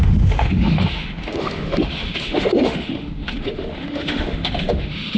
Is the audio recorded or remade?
remade